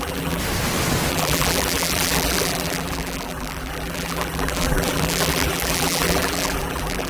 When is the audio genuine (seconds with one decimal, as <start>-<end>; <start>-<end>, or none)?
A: 0.4-1.1